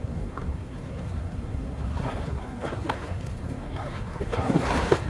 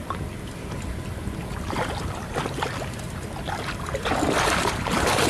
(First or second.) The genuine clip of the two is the second